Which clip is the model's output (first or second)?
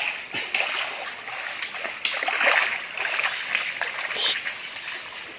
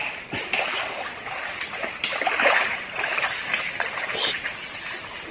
second